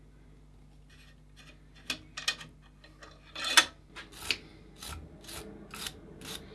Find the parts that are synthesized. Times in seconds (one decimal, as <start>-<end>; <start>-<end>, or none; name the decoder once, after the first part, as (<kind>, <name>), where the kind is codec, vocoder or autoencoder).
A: none